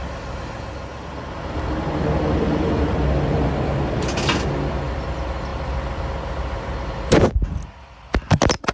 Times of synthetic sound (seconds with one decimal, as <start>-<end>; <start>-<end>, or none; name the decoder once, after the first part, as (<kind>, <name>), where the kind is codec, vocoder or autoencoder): 0.9-3.5 (vocoder, BigVGAN v2); 5.5-6.1